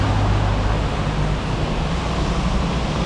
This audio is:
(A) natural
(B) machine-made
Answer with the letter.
A